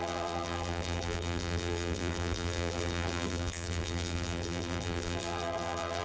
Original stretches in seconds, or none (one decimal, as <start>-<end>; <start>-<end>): none